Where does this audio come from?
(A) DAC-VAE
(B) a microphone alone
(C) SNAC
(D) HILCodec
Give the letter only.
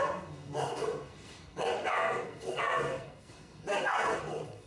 C